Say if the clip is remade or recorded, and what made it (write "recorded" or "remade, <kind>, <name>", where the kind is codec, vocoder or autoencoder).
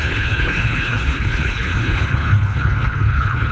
remade, codec, HILCodec